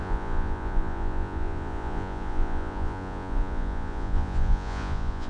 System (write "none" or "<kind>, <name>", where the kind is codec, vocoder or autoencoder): vocoder, Vocos